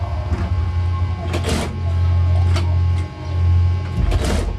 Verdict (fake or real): real